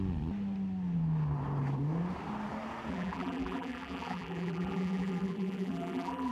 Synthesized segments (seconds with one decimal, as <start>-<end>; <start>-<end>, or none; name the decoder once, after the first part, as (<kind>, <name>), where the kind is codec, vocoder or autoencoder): 2.9-6.3 (vocoder, BigVGAN v2)